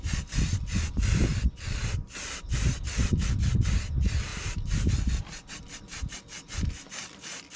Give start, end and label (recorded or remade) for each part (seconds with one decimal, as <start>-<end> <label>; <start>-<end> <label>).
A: 0.0-7.6 recorded